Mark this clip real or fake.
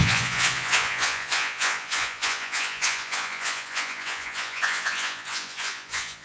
fake